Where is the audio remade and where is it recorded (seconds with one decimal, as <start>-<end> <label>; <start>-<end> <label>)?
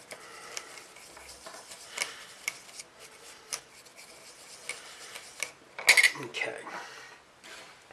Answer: 0.0-7.9 recorded